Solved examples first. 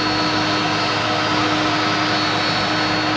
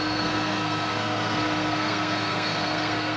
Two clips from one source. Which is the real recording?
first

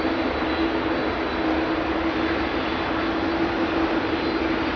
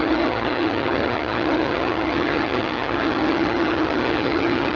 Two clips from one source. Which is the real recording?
first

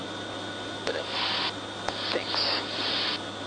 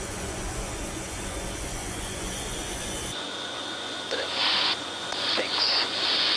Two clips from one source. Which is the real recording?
first